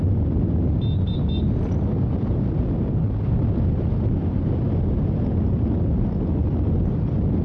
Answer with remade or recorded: recorded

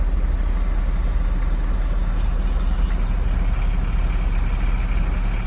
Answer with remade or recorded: recorded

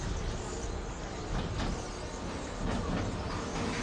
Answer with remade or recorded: recorded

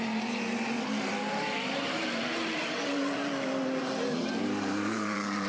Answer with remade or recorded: remade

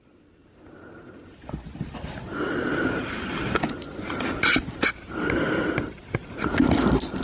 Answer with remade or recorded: recorded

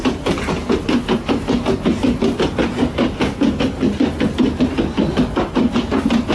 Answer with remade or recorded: recorded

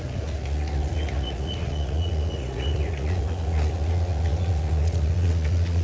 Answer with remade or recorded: remade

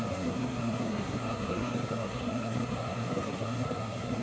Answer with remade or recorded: remade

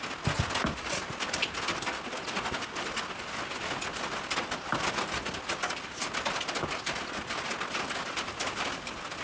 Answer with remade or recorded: recorded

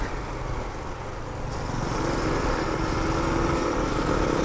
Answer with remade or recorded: recorded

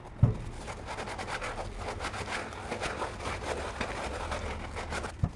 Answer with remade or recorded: recorded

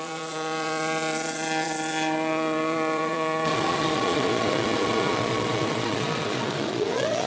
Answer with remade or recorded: remade